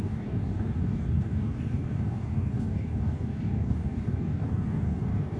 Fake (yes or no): yes